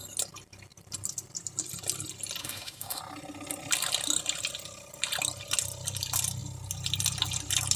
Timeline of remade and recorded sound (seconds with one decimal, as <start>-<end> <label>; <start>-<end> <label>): 0.0-2.4 recorded; 2.4-3.0 remade; 3.0-7.8 recorded